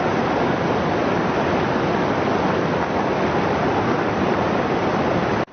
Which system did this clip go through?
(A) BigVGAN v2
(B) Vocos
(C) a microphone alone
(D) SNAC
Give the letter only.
C